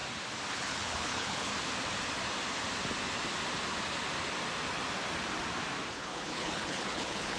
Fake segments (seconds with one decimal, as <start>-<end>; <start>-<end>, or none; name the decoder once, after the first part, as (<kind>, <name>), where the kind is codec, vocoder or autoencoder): 0.5-1.5 (codec, HILCodec); 5.9-7.4